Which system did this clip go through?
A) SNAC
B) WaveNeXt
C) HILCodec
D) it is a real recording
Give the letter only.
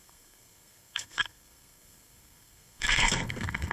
A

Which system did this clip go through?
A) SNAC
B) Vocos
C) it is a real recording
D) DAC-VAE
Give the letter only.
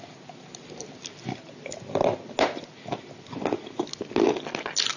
C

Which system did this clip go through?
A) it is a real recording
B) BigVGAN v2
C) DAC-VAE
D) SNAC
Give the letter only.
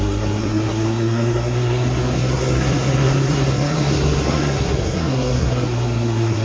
D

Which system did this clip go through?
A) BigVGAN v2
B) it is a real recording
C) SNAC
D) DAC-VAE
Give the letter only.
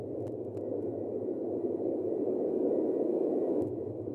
B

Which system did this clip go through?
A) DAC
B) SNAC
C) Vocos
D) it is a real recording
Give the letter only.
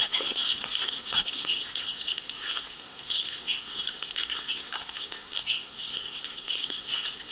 B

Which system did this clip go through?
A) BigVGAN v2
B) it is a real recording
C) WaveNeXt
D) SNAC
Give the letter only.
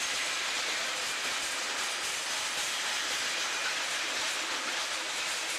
B